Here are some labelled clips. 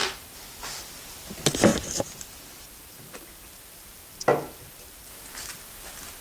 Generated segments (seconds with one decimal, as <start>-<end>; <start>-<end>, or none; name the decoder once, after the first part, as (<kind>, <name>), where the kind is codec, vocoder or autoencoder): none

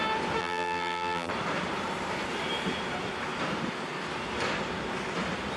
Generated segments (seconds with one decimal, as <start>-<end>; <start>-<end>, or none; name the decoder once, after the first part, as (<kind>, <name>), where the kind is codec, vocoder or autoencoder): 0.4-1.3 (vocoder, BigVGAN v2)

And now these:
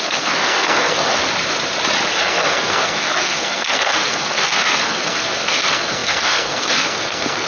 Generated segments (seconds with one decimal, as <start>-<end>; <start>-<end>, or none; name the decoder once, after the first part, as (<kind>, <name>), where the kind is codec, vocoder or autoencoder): 0.0-1.2 (codec, SNAC); 2.2-7.5

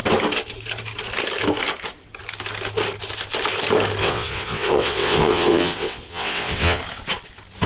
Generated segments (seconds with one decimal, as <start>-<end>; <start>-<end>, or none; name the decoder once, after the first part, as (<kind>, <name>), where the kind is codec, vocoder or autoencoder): 4.0-6.8 (vocoder, WaveNeXt)